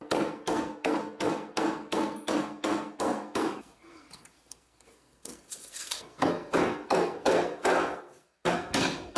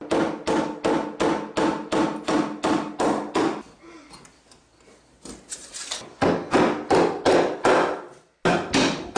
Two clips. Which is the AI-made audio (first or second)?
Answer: first